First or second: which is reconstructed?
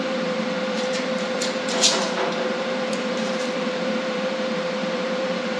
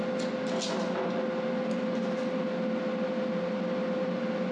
first